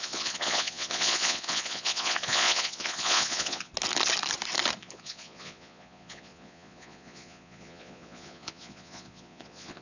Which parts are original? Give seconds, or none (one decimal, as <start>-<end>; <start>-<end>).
3.7-4.8